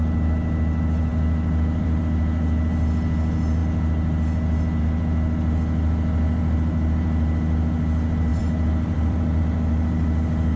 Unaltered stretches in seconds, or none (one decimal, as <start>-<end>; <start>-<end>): 0.0-1.1; 2.0-8.3; 9.4-10.6